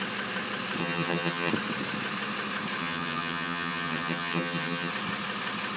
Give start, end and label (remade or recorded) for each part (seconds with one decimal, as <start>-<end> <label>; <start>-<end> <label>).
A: 0.0-0.8 recorded; 0.8-1.5 remade; 1.5-2.8 recorded; 2.8-4.9 remade; 4.9-5.8 recorded